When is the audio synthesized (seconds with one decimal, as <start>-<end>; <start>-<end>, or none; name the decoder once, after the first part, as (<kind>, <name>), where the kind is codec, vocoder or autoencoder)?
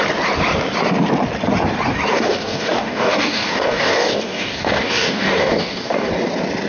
2.1-6.1 (codec, DAC)